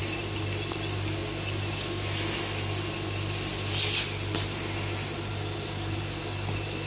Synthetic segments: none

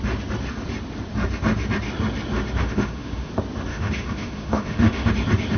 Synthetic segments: 2.6-3.3 (autoencoder, DAC-VAE); 3.7-5.1

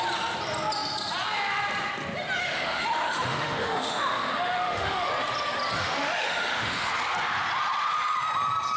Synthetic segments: 2.4-5.1 (autoencoder, DAC-VAE); 5.8-6.9

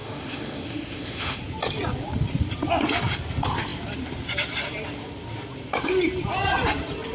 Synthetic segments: 0.0-1.4 (autoencoder, DAC-VAE)

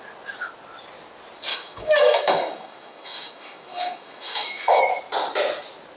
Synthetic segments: 1.5-4.8 (autoencoder, DAC-VAE)